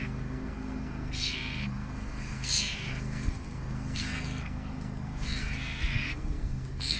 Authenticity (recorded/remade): remade